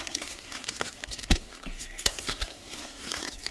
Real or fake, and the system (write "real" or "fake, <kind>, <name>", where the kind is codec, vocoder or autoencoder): fake, codec, SNAC